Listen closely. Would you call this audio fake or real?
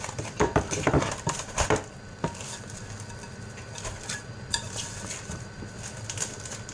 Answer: real